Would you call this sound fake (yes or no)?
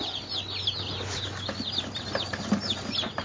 no